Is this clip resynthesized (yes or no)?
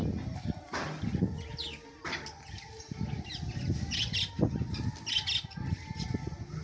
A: no